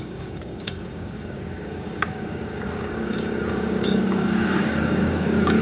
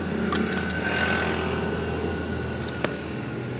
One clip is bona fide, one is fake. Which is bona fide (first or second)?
second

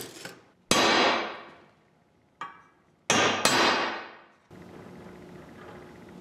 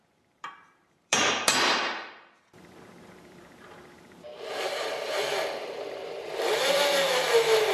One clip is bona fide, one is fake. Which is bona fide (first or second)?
first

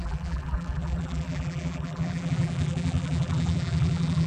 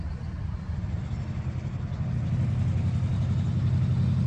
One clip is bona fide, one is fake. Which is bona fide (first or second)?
second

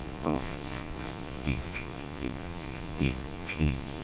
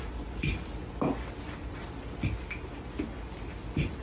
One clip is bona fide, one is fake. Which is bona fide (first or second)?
second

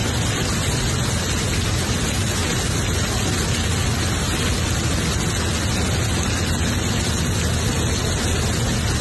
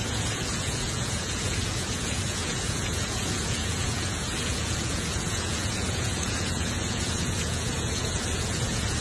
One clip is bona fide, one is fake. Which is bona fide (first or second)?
first